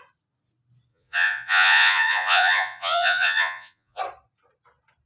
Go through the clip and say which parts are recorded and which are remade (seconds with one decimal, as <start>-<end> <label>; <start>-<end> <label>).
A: 0.0-0.9 recorded; 0.9-4.0 remade; 4.0-5.1 recorded